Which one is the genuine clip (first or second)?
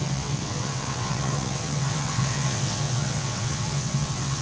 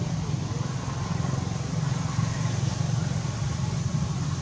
second